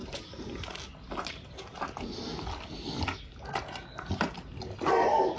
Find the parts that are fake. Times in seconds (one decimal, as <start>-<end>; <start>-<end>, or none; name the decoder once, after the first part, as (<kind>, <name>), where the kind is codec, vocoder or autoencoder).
none